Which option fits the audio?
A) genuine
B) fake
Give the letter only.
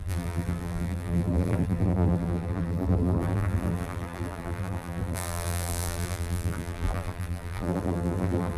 B